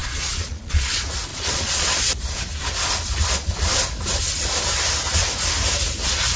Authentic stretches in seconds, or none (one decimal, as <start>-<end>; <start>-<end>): 0.9-1.3; 2.1-6.4